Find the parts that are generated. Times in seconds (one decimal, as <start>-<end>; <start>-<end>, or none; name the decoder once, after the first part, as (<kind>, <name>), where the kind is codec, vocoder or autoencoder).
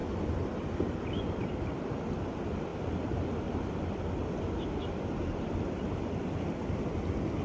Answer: none